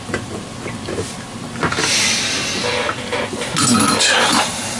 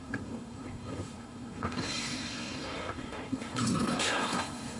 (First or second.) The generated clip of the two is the second